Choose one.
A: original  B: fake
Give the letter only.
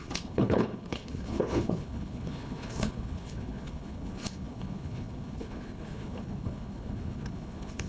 B